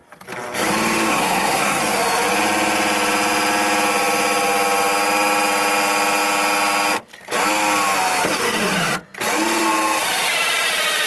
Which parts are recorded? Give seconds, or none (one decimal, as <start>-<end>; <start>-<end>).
0.0-1.1; 1.8-11.1